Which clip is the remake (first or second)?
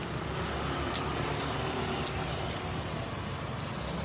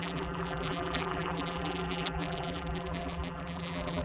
second